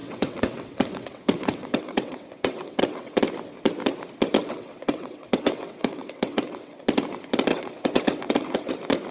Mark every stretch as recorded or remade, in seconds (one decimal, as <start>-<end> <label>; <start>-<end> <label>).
0.0-3.2 remade; 3.2-4.4 recorded; 4.4-6.8 remade; 6.8-7.5 recorded; 7.5-8.7 remade; 8.7-9.1 recorded